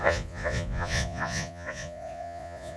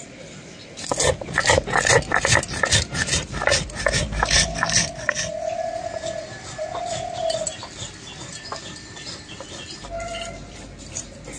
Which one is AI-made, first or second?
first